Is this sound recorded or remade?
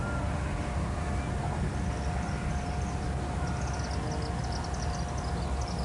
recorded